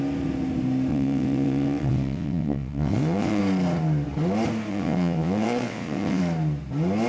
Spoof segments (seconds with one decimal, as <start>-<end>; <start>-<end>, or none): 0.9-3.4; 4.7-6.2